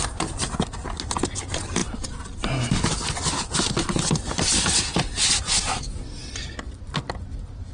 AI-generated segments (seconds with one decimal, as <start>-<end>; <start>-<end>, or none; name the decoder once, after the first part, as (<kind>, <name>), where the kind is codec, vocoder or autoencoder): none